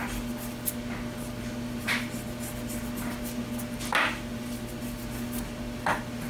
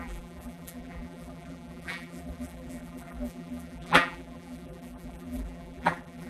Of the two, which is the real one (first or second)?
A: first